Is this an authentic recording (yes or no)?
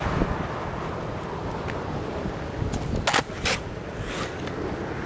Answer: yes